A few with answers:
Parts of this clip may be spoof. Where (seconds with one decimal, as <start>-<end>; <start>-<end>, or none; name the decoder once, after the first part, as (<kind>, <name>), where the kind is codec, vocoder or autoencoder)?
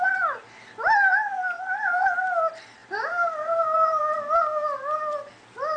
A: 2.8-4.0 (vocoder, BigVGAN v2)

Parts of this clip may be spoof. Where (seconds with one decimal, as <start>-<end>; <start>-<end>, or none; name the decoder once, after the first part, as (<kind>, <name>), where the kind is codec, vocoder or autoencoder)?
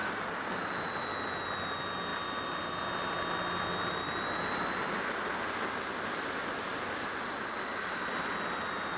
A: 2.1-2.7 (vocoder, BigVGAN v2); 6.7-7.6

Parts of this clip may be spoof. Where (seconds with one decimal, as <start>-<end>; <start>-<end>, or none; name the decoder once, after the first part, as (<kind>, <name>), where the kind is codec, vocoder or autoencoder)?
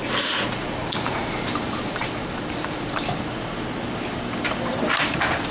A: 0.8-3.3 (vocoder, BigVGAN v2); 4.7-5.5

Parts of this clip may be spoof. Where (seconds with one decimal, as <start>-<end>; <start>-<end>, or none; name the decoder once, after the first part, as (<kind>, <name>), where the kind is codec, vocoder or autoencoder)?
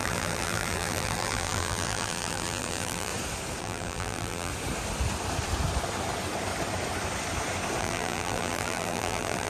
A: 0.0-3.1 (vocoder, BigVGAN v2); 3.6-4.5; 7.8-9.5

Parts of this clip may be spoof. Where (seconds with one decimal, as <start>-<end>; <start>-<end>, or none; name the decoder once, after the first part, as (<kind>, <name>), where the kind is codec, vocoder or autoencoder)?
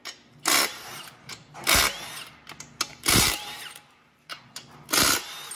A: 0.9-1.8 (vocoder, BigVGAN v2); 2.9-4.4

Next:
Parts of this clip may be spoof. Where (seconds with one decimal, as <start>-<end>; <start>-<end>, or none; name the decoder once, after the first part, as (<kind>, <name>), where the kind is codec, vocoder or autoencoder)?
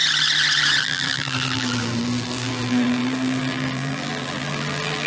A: 0.8-5.1 (vocoder, BigVGAN v2)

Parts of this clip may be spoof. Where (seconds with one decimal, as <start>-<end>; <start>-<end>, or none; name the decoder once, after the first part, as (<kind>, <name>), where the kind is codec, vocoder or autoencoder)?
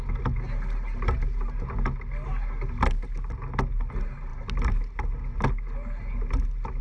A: none